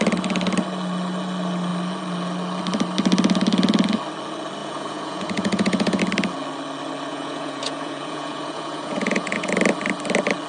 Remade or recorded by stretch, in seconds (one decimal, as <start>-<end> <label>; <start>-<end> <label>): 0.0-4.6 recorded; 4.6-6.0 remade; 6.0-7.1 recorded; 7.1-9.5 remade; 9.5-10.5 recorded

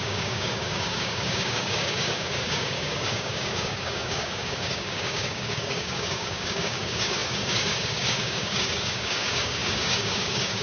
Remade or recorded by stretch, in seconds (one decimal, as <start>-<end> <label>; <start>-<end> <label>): 0.0-10.6 remade

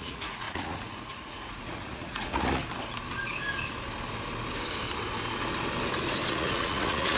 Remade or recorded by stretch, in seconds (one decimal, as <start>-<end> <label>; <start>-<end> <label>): 0.0-2.6 remade; 2.6-6.3 recorded; 6.3-7.2 remade

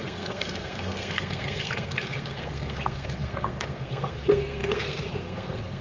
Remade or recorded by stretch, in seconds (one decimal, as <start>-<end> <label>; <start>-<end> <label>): 0.0-5.8 remade

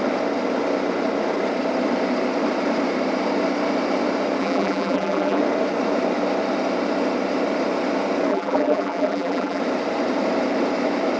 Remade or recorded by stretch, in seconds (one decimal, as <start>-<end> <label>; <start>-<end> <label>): 0.0-4.4 recorded; 4.4-5.4 remade; 5.4-8.3 recorded; 8.3-9.6 remade; 9.6-11.2 recorded

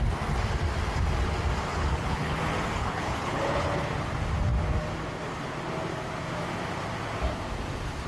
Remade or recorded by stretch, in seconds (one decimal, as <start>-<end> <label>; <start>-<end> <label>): 0.0-1.7 recorded; 1.7-2.4 remade; 2.4-2.8 recorded; 2.8-3.9 remade; 3.9-8.1 recorded